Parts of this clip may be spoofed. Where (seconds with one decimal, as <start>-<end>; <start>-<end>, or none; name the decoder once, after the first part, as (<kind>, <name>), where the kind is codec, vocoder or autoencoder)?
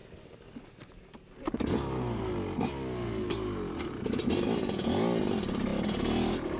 none